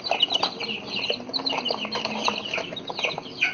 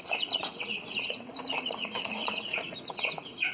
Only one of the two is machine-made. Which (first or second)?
second